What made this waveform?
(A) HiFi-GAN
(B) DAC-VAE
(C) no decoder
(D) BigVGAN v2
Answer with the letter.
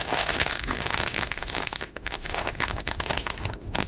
B